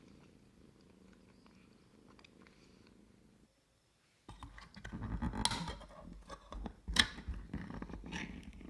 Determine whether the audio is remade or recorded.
recorded